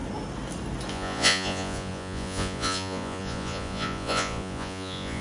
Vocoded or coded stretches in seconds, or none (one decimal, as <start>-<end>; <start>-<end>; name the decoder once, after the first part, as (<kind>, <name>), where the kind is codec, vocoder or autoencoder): 0.9-5.2 (vocoder, Vocos)